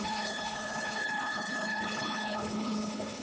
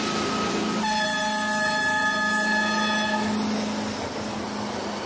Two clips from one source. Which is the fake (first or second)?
first